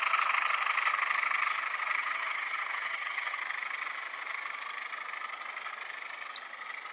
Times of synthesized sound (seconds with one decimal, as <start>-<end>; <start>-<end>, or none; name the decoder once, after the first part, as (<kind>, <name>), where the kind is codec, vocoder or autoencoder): 2.0-3.4 (vocoder, HiFi-GAN)